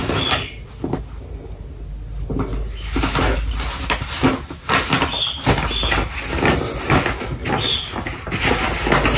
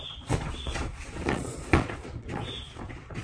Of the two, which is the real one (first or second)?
first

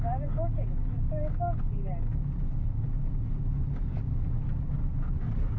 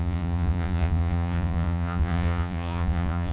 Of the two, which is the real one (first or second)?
first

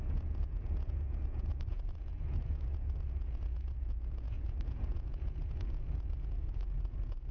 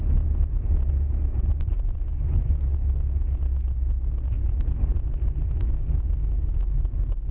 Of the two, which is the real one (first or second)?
second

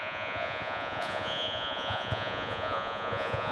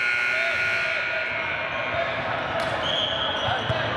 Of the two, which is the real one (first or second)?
second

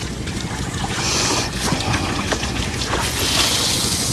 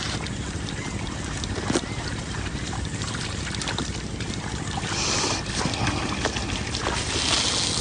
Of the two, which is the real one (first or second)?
second